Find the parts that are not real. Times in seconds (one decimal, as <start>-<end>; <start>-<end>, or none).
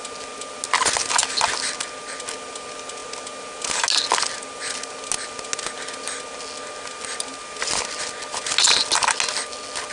none